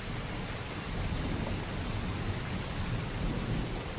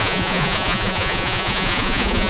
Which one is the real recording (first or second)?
first